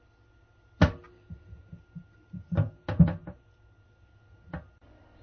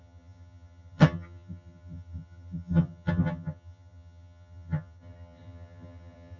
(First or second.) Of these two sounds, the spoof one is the second